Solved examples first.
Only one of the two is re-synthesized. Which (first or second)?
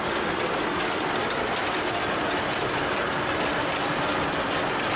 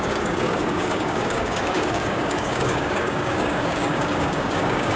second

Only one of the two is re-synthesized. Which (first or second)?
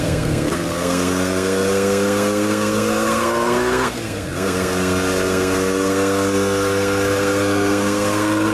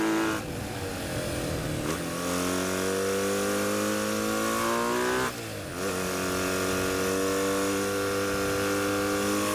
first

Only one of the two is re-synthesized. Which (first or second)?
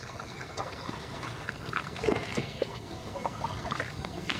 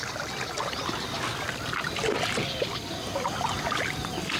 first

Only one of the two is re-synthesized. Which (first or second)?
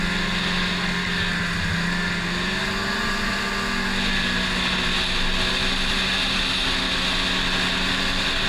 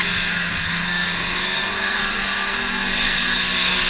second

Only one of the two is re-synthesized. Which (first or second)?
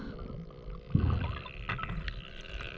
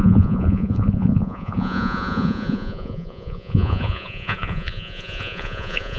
second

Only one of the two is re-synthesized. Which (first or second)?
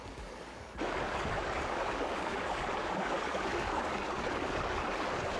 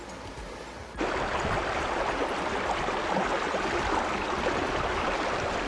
first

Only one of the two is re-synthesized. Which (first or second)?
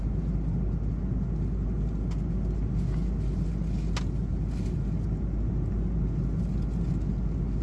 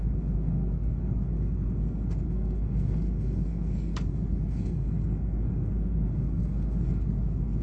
second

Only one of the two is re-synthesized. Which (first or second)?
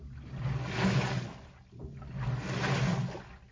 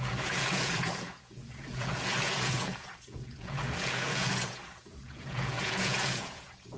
second